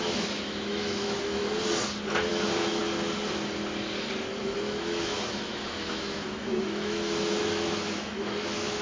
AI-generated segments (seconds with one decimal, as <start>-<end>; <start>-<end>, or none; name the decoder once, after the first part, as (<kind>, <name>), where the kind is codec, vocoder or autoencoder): 0.0-1.4 (autoencoder, DAC-VAE); 2.3-2.8; 4.4-8.8

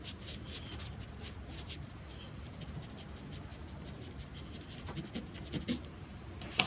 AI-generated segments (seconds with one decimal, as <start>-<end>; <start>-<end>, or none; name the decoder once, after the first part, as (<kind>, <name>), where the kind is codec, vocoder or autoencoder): none